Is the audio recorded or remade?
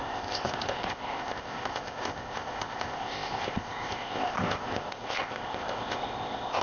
remade